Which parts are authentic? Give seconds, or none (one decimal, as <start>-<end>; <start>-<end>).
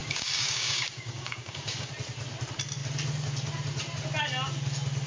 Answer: 1.9-5.1